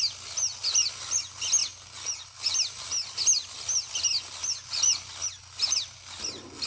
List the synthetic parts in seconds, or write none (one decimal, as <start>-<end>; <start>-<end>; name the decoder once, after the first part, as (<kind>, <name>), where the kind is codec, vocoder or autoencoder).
none